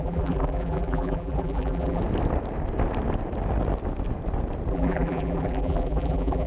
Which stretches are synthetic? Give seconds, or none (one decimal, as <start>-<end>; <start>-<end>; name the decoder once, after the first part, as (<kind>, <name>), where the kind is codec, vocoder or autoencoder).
0.0-2.0 (vocoder, BigVGAN v2); 4.7-6.5